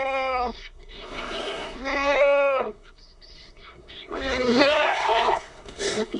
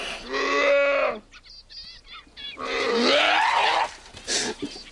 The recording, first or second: second